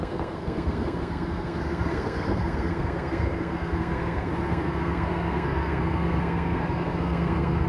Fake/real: fake